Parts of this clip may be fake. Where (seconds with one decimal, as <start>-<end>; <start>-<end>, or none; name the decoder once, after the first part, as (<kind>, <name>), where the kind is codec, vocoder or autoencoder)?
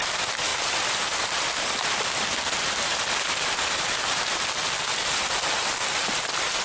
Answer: 0.0-6.6 (vocoder, BigVGAN v2)